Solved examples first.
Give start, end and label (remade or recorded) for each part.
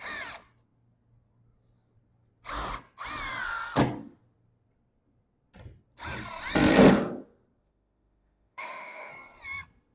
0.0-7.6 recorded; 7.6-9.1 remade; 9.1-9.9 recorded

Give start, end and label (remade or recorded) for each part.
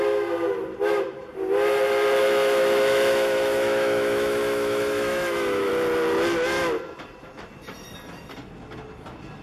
0.0-2.2 recorded; 2.2-5.7 remade; 5.7-9.4 recorded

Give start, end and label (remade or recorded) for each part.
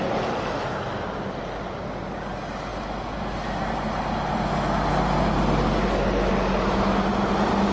0.0-7.7 recorded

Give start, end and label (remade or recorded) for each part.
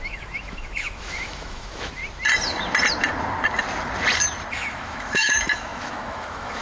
0.0-2.0 remade; 2.0-4.5 recorded; 4.5-6.6 remade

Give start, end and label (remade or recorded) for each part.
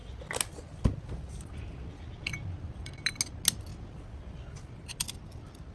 0.0-5.7 recorded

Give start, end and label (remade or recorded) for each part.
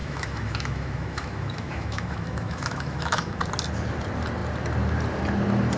0.0-3.4 remade; 3.4-5.8 recorded